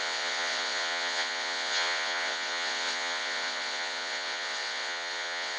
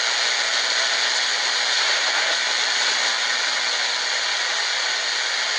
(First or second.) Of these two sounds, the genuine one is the second